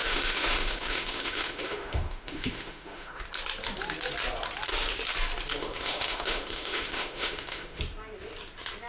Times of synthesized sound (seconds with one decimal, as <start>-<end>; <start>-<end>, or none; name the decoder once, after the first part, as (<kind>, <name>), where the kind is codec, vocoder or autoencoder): 0.0-3.2 (autoencoder, DAC-VAE); 5.6-7.8